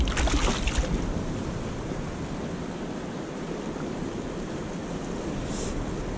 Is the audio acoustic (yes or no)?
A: yes